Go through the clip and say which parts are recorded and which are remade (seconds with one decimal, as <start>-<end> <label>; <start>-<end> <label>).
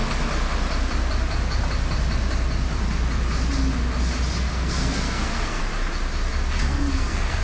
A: 0.0-4.4 recorded; 4.4-5.6 remade; 5.6-6.6 recorded; 6.6-7.4 remade